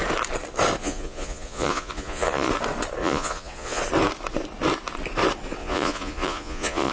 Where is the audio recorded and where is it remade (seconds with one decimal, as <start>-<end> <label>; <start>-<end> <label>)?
0.0-0.8 recorded; 0.8-2.5 remade; 2.5-3.0 recorded; 3.0-3.8 remade; 3.8-5.6 recorded; 5.6-6.9 remade